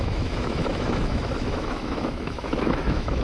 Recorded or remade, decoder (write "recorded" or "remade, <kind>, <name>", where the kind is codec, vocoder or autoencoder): remade, autoencoder, DAC-VAE